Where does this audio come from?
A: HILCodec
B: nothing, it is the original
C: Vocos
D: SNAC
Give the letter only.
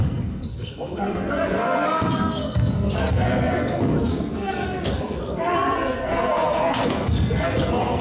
D